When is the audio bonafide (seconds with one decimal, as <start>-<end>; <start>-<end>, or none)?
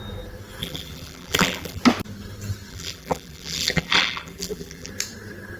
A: 0.0-0.6; 1.8-2.7; 4.9-5.6